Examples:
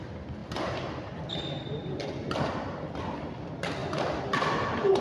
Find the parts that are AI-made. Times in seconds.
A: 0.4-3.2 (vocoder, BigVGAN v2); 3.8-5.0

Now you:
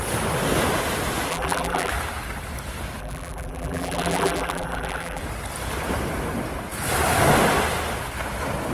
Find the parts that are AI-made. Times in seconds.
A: 1.3-1.9 (vocoder, BigVGAN v2); 3.0-5.2

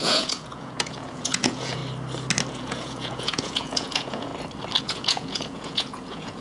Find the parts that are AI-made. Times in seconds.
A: 0.0-1.8 (vocoder, Vocos); 2.5-4.3; 4.8-6.4

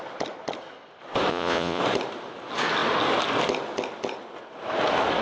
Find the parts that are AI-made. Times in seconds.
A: 1.3-1.8 (vocoder, Vocos)